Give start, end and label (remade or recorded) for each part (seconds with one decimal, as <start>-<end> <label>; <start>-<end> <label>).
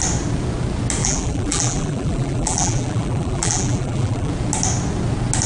0.0-1.0 recorded; 1.0-4.3 remade; 4.3-5.5 recorded